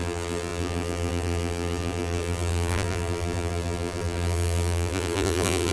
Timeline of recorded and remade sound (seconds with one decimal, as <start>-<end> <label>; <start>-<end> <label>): 0.0-5.7 remade